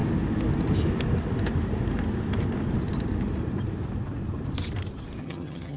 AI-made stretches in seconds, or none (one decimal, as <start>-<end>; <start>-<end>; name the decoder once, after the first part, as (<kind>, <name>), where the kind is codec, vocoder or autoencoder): 5.2-5.8 (vocoder, HiFi-GAN)